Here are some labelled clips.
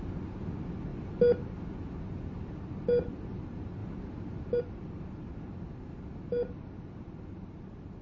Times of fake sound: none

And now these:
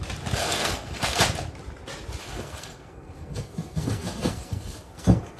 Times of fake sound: 0.4-1.2 (codec, SNAC); 2.2-5.4